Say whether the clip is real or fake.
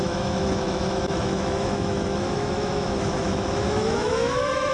fake